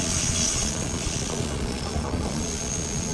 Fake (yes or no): yes